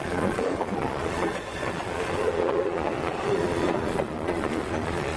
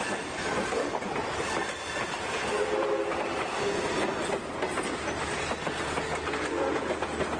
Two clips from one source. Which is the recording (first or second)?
second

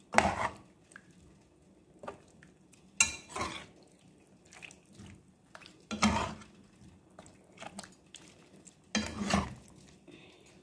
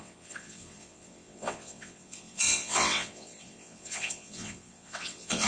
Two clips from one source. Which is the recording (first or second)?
first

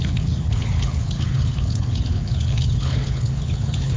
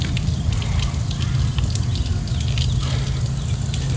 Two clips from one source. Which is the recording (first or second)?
second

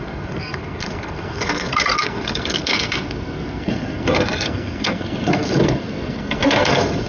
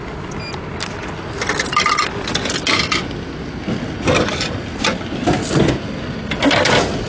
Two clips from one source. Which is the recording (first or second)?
second